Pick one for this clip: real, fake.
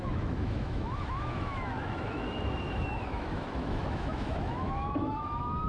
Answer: fake